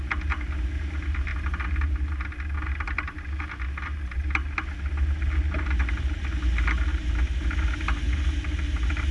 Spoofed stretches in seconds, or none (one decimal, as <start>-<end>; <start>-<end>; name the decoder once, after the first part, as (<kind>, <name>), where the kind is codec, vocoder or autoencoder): none